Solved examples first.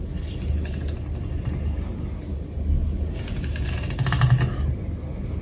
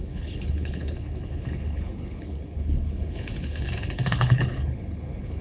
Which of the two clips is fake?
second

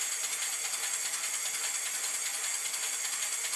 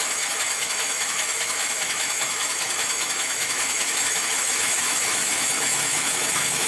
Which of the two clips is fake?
second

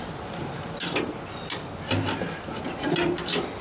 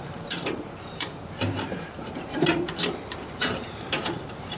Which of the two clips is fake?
second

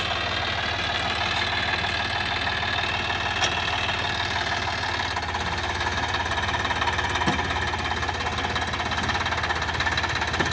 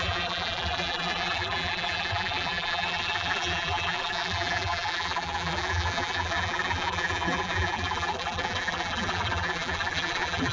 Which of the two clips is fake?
second